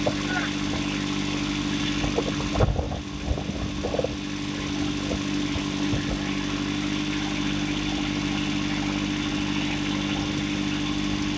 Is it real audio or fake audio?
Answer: real